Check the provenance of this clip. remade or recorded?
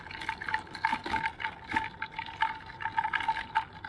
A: recorded